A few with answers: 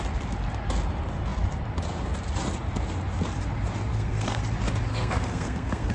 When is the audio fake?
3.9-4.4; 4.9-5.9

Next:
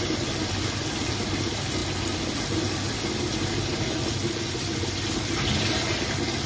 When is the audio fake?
none

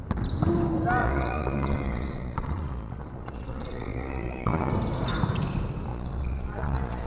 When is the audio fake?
1.0-4.7; 5.9-7.1

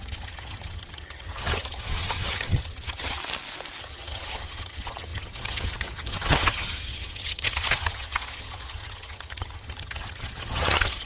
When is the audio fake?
0.0-3.2; 3.8-11.1

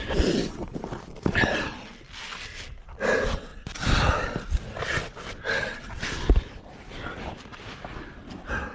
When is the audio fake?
none